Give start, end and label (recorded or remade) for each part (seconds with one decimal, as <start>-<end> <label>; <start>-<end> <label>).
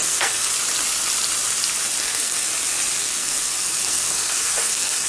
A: 0.0-0.5 remade; 0.5-2.0 recorded; 2.0-2.5 remade; 2.5-3.0 recorded; 3.0-5.1 remade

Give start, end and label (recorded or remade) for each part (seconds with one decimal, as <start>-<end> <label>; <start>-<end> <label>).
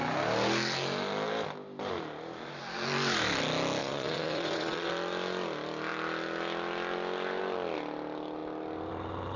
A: 0.0-3.8 recorded; 3.8-4.9 remade; 4.9-9.4 recorded